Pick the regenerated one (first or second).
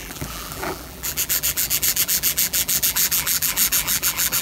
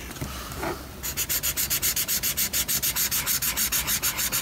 first